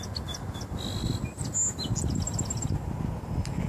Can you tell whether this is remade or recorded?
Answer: recorded